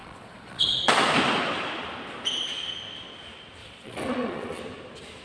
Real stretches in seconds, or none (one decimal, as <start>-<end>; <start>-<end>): 0.9-3.6; 4.6-5.2